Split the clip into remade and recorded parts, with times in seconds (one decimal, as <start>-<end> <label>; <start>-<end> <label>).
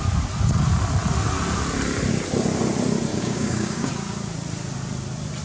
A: 0.0-3.1 recorded; 3.1-3.9 remade; 3.9-5.4 recorded